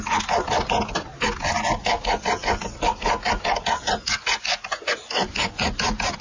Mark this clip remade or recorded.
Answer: recorded